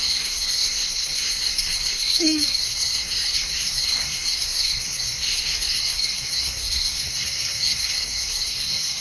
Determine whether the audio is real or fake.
fake